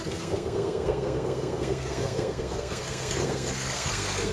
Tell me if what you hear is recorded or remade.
remade